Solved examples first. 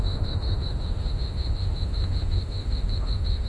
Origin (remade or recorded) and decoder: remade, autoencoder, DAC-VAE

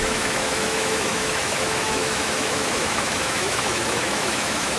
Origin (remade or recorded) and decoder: remade, autoencoder, DAC-VAE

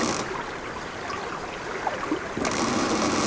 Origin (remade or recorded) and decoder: recorded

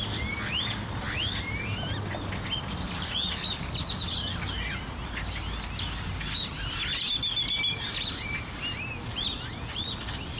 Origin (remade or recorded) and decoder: recorded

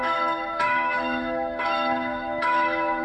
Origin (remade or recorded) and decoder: remade, autoencoder, DAC-VAE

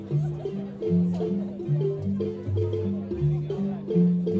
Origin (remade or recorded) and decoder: recorded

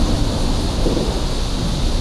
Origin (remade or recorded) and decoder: recorded